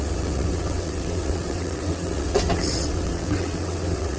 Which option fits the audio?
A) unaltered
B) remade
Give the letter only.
B